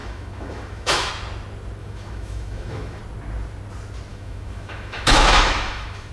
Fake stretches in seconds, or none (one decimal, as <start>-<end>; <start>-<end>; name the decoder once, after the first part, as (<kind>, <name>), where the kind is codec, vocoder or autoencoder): 0.0-1.1 (autoencoder, DAC-VAE); 1.8-3.0; 4.1-6.1